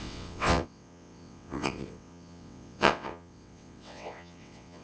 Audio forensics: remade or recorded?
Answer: remade